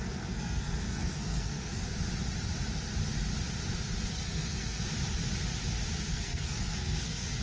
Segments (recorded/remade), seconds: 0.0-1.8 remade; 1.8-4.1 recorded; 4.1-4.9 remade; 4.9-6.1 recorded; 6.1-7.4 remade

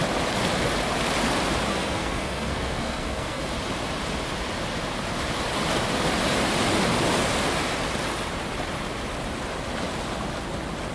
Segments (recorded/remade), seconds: 0.0-1.7 recorded; 1.7-3.4 remade; 3.4-10.9 recorded